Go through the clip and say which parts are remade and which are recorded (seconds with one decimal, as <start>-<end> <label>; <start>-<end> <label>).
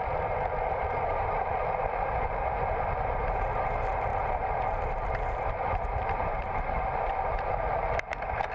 0.0-8.5 remade